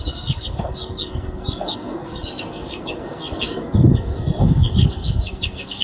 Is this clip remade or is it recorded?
remade